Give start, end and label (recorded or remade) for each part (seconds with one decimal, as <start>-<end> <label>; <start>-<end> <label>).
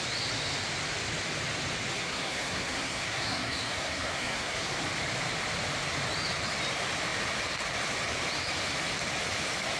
0.0-1.9 recorded; 1.9-4.7 remade; 4.7-9.8 recorded